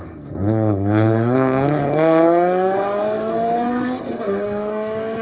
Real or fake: fake